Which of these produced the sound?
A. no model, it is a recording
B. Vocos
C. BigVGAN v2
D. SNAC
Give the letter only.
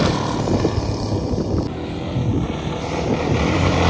A